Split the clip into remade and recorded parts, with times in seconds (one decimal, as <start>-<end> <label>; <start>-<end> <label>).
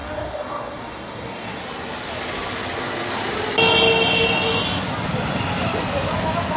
0.0-1.6 remade; 1.6-6.6 recorded